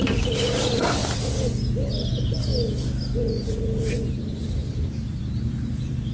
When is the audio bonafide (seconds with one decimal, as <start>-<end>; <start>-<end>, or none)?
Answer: 1.0-1.9; 2.5-3.5